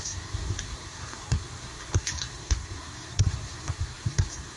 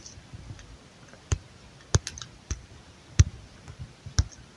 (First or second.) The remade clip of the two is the first